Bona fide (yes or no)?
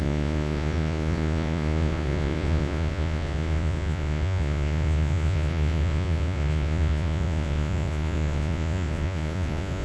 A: no